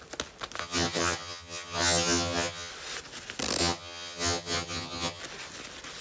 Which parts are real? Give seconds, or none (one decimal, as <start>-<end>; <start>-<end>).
0.0-0.6; 2.7-3.6; 5.2-6.0